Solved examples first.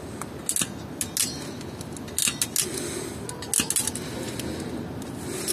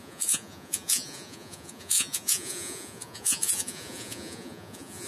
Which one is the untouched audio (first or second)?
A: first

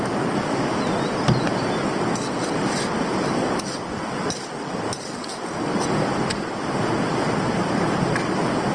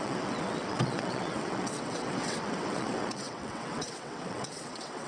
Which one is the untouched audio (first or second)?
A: first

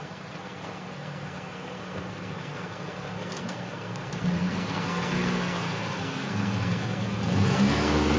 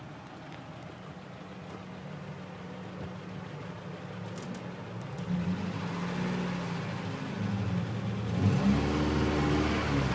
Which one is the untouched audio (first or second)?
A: second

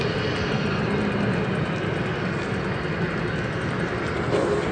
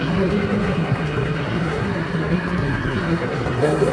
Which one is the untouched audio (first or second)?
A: first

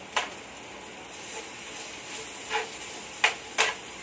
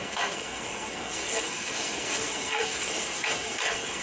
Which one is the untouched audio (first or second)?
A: first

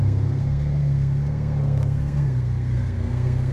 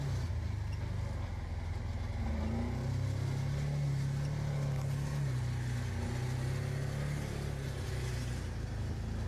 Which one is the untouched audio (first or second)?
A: second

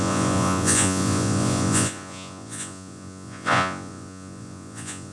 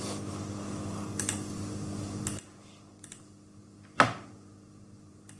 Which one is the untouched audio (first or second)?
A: second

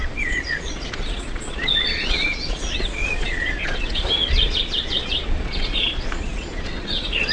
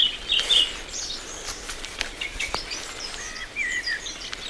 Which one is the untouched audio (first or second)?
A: second